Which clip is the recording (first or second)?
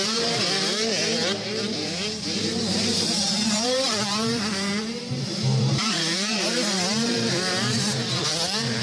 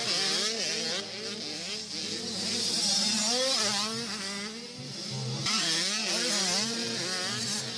second